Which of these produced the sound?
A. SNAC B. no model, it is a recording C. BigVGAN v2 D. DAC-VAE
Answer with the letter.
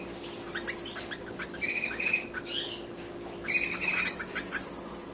B